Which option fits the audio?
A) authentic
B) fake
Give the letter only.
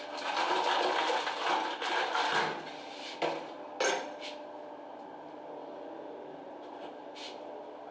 A